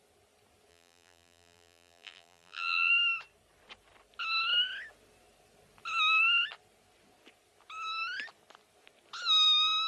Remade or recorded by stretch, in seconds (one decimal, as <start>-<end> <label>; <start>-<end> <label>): 0.0-0.7 recorded; 0.7-2.9 remade; 2.9-9.9 recorded